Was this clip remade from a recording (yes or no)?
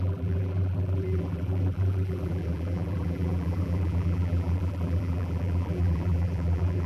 yes